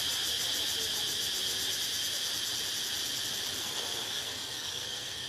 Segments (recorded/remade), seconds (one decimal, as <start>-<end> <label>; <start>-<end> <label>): 0.0-3.6 recorded; 3.6-5.3 remade